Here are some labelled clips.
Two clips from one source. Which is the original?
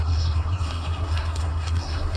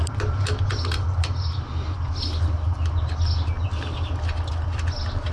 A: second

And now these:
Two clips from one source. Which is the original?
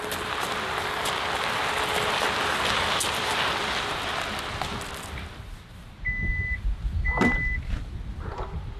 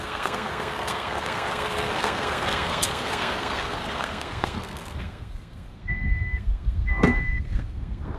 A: first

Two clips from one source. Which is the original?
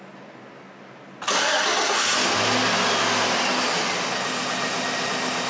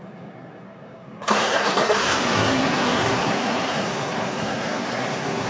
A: first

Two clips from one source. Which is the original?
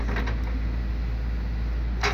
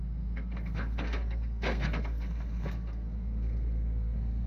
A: first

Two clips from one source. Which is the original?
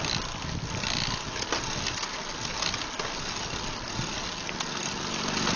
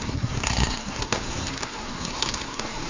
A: first